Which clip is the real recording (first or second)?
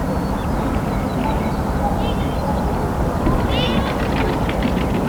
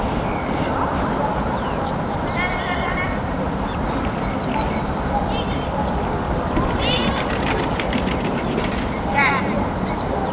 first